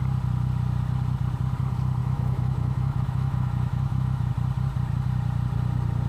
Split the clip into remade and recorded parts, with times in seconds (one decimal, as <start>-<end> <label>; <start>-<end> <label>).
0.0-2.0 recorded; 2.0-4.3 remade; 4.3-6.1 recorded